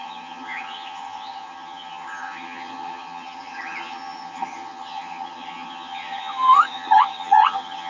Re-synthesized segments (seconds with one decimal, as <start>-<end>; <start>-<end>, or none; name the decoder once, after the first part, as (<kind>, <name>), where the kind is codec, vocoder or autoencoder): 0.0-7.9 (vocoder, HiFi-GAN)